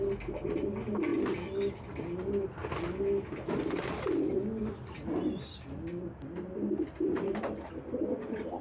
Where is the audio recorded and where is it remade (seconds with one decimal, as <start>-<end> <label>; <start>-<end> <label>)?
0.0-8.6 recorded